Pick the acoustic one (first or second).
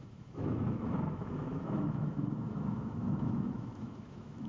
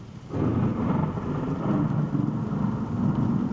second